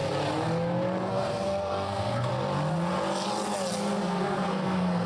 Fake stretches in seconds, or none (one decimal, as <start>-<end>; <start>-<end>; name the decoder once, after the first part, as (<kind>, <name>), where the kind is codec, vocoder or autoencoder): 1.0-2.3 (codec, SNAC); 4.0-5.1